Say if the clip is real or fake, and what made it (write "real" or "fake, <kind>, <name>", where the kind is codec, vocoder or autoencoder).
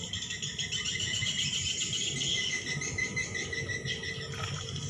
real